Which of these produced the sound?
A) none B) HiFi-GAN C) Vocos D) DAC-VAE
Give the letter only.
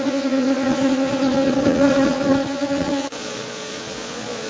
C